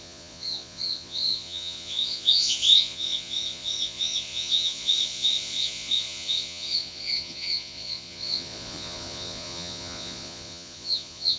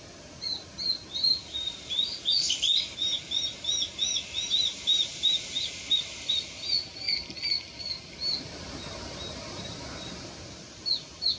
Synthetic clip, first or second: first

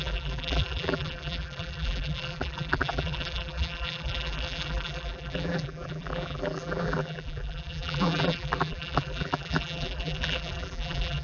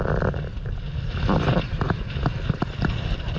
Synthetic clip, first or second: first